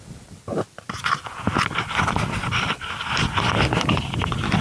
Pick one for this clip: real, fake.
real